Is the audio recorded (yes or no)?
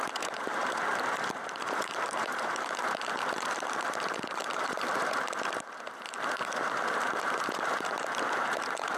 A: no